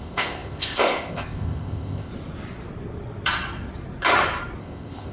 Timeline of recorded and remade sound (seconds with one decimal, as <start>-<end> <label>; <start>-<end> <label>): 0.0-2.1 remade; 2.1-4.6 recorded; 4.6-5.1 remade